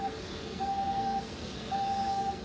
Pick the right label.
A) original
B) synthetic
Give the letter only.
B